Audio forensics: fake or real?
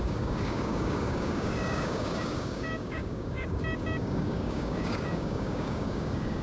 fake